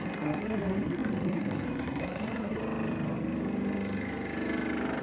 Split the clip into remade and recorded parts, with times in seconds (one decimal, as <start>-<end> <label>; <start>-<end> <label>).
0.0-2.6 remade; 2.6-5.0 recorded